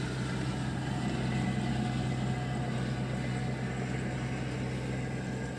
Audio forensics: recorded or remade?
recorded